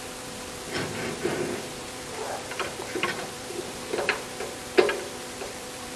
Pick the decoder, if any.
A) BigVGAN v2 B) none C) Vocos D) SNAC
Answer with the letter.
A